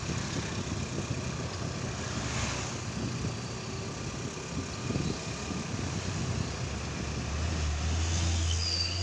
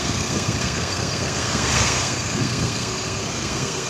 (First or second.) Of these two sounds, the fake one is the second